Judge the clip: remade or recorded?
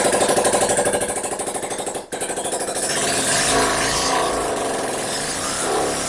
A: recorded